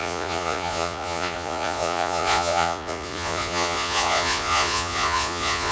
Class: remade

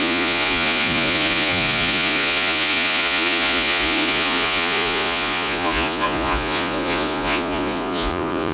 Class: remade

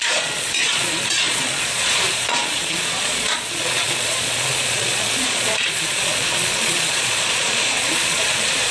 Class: remade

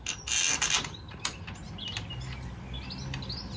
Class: recorded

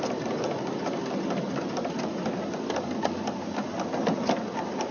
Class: recorded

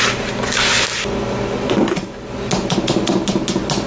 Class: recorded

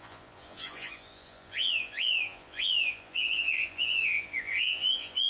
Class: remade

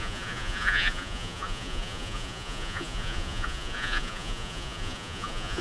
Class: remade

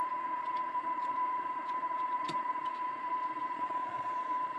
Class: remade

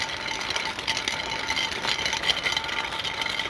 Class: recorded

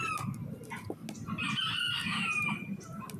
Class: recorded